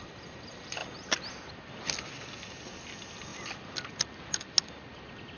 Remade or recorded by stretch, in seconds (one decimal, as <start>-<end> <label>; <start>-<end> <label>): 0.0-5.4 recorded